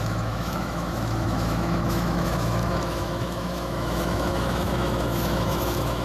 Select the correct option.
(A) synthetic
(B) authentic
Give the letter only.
A